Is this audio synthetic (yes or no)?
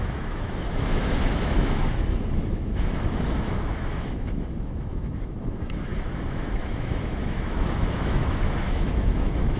yes